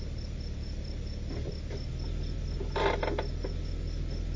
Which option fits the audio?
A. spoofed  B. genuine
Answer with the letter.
B